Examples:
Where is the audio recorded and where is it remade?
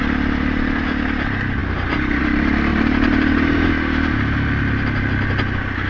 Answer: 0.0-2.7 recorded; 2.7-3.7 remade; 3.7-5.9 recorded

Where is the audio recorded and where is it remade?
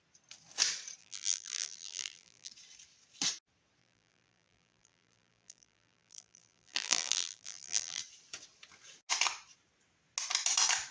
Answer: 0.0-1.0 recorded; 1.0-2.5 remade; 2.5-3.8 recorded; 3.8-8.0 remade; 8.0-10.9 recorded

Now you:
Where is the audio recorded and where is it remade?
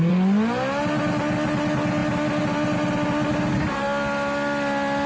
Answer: 0.0-5.1 recorded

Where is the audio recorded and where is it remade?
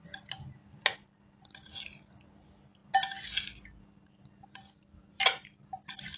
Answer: 0.0-6.2 recorded